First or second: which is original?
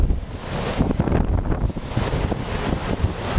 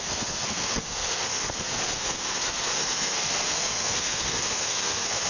first